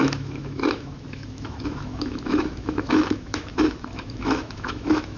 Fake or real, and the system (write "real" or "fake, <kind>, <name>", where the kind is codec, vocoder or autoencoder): fake, autoencoder, DAC-VAE